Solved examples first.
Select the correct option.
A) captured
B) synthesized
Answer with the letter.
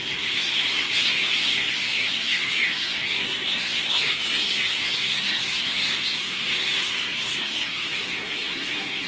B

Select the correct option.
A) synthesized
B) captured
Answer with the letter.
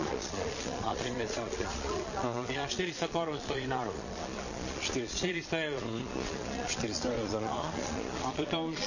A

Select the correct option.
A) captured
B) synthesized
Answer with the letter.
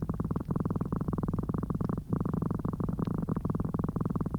A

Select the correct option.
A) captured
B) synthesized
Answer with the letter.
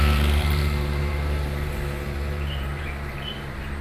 B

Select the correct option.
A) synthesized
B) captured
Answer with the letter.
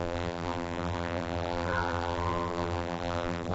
A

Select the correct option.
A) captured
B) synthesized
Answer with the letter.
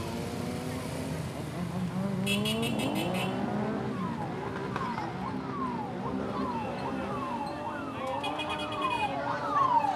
A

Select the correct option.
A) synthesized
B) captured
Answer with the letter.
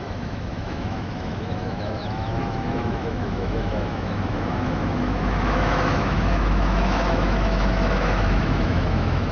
A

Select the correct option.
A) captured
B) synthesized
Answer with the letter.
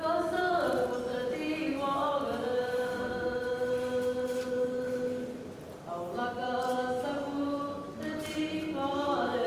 A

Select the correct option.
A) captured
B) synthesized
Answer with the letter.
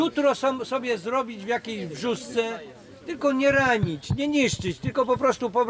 A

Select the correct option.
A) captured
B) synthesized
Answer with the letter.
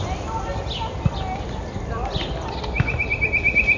A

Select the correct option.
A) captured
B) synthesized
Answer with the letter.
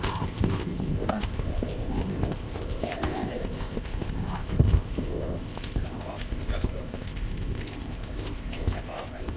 B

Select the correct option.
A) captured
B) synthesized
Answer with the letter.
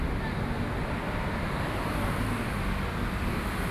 A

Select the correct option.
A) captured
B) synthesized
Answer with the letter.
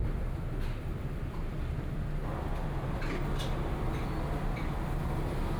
A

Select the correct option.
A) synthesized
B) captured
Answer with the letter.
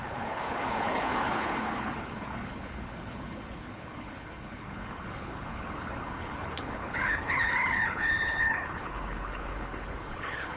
A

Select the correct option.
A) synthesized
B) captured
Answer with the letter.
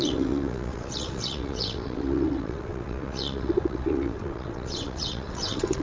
A